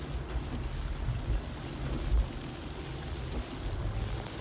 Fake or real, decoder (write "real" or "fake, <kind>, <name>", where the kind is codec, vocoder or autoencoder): real